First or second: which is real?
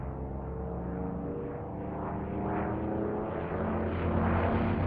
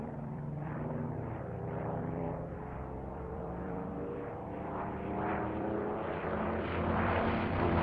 first